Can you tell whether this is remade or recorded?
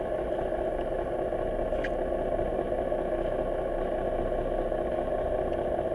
recorded